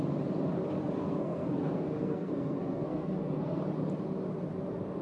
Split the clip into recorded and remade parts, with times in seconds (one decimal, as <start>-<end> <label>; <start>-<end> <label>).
0.0-1.0 recorded; 1.0-3.6 remade; 3.6-5.0 recorded